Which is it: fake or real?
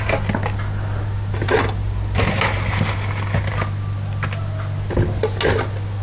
real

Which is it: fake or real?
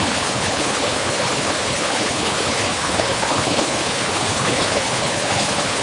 fake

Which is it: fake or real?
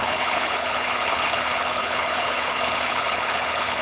fake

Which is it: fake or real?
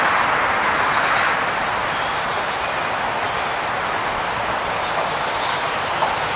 real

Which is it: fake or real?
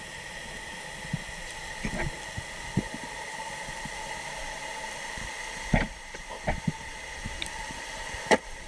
real